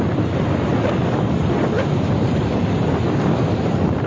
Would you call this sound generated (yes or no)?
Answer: no